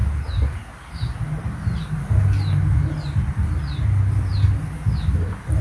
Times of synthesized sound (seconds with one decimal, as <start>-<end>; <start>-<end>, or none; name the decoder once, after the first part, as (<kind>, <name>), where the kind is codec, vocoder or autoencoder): 3.4-4.3 (vocoder, BigVGAN v2); 5.1-5.6